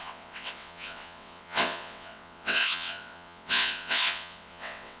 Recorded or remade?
remade